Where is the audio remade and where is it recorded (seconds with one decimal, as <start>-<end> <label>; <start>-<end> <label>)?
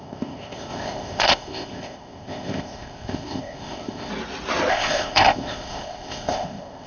0.0-4.1 remade; 4.1-4.7 recorded; 4.7-6.9 remade